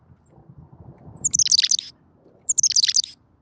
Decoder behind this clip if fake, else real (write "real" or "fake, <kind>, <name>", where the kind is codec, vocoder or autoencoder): real